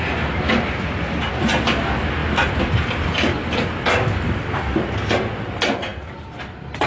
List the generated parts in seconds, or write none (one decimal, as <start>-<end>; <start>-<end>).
none